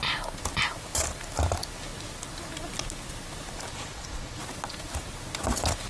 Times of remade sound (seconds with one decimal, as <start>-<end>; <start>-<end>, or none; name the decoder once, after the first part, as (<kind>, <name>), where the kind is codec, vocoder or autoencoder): 3.7-4.4 (vocoder, Vocos)